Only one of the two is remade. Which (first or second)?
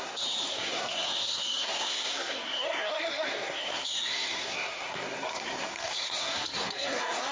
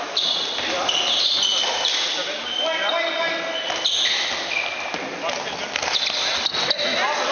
first